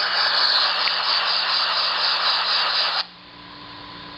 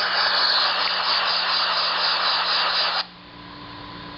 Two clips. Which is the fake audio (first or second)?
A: first